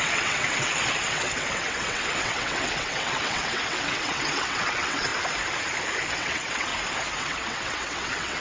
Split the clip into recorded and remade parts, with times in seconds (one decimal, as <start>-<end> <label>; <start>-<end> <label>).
0.0-5.1 remade; 5.1-6.1 recorded; 6.1-6.7 remade; 6.7-7.2 recorded; 7.2-8.4 remade